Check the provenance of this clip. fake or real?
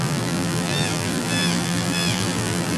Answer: fake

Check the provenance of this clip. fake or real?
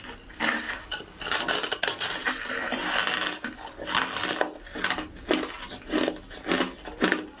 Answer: real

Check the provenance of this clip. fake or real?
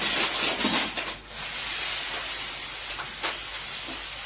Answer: real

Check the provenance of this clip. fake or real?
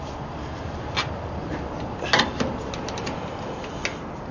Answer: real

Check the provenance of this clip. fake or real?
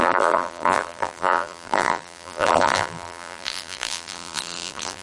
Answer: fake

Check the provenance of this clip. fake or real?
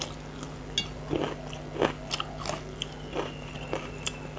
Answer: real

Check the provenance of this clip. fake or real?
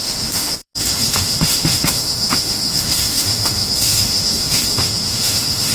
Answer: fake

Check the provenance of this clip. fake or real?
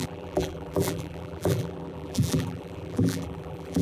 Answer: fake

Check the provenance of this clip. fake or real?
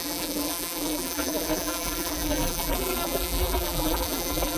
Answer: fake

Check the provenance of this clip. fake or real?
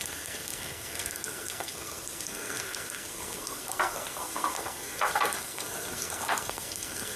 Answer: fake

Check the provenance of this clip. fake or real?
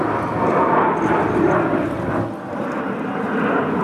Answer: real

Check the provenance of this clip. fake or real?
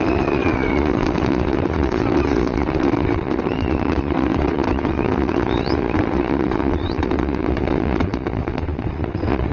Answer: fake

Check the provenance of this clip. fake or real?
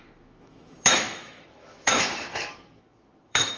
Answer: fake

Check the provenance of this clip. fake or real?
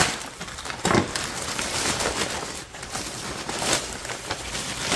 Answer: fake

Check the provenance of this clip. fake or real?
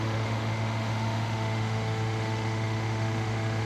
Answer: fake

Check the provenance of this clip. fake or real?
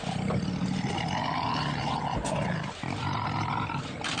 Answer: real